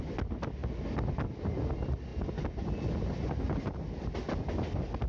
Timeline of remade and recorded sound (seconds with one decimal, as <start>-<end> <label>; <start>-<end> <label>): 0.0-5.1 recorded